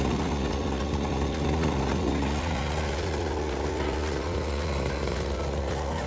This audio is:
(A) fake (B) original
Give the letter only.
A